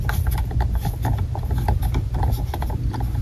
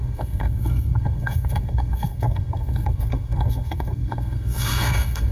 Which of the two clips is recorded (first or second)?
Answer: first